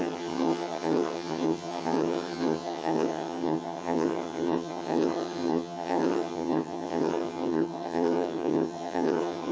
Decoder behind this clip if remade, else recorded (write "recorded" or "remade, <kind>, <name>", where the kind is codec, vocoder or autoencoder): remade, vocoder, HiFi-GAN